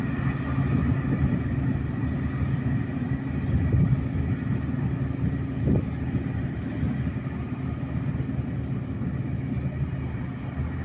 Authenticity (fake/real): real